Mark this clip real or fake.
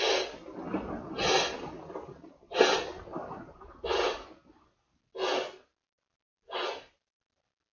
real